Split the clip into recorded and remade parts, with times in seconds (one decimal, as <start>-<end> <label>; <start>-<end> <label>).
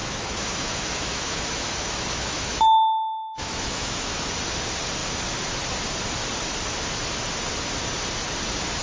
0.0-4.3 remade; 4.3-8.8 recorded